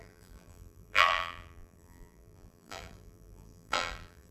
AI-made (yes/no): yes